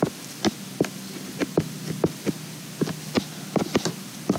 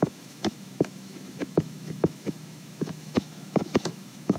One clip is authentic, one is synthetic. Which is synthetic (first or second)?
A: second